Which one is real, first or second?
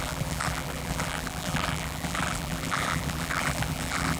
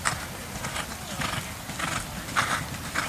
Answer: second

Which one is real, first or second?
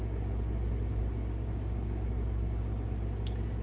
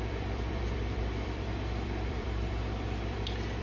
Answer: first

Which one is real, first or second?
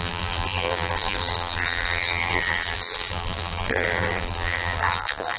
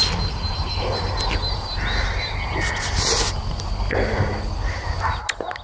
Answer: second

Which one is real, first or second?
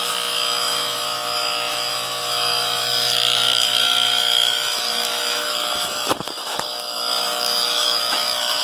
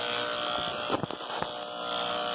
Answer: second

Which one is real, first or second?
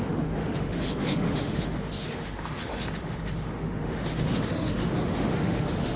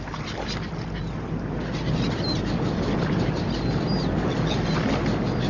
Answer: second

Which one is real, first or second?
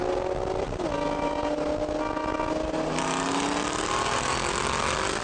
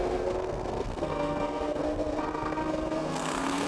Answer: first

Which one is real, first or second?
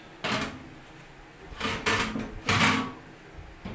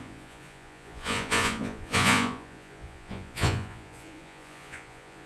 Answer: first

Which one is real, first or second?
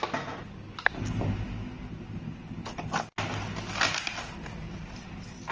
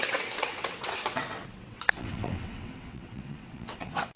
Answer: first